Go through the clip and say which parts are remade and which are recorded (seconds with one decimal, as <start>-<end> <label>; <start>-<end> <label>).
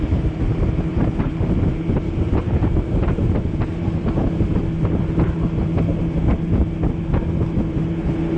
0.0-0.9 recorded; 0.9-4.6 remade; 4.6-6.3 recorded; 6.3-6.8 remade; 6.8-8.4 recorded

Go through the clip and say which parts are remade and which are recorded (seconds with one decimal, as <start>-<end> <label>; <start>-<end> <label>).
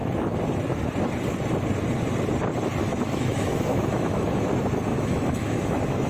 0.0-2.8 recorded; 2.8-4.4 remade; 4.4-4.9 recorded; 4.9-6.1 remade